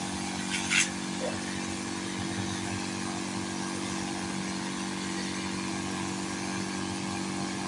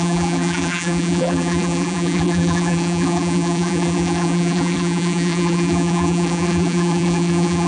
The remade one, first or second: second